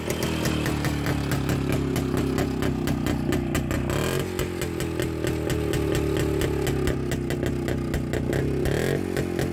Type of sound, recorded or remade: recorded